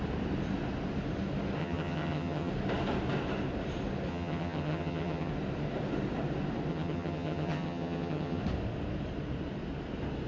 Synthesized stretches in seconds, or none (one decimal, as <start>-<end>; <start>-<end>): 1.6-2.5; 4.1-5.3; 6.7-8.4